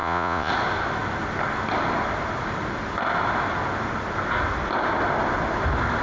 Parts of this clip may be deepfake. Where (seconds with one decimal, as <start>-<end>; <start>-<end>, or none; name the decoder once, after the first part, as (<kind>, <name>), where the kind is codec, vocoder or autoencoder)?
0.0-0.5 (vocoder, Vocos)